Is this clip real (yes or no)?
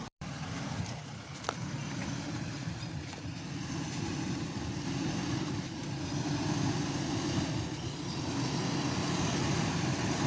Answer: no